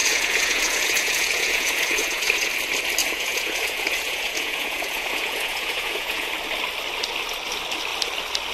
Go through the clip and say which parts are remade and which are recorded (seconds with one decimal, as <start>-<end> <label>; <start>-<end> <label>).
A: 0.0-2.5 remade; 2.5-3.0 recorded; 3.0-6.3 remade; 6.3-8.5 recorded